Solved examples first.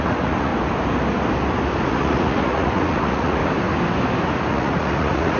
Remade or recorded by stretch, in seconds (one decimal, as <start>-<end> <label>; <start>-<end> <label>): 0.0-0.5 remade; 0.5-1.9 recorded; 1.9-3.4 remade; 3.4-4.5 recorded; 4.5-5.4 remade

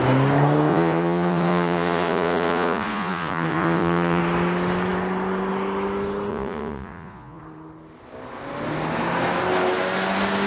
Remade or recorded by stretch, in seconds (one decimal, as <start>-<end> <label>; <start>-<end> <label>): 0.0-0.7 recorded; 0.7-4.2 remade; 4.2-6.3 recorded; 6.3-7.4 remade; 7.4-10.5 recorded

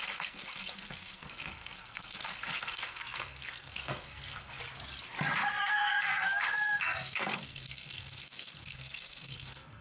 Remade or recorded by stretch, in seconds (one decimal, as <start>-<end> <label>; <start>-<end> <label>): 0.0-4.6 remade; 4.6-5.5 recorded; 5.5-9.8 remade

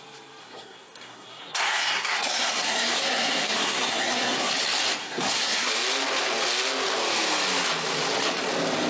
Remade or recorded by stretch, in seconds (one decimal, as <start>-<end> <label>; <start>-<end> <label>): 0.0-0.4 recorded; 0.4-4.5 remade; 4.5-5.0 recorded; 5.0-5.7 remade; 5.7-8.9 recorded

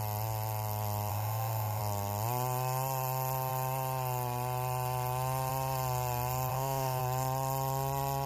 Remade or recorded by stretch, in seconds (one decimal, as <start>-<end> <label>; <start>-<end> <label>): 0.0-1.1 recorded; 1.1-1.8 remade; 1.8-6.5 recorded; 6.5-7.0 remade; 7.0-8.3 recorded

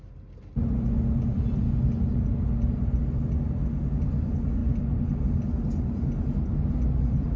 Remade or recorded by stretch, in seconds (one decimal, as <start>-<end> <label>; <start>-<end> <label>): 0.0-7.4 recorded